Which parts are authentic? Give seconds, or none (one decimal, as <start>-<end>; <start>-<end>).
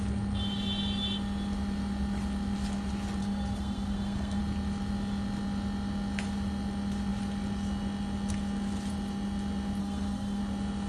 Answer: 0.0-3.2; 4.4-9.8; 10.4-10.9